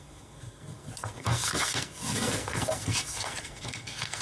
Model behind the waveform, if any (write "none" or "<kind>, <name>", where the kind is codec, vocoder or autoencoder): codec, SNAC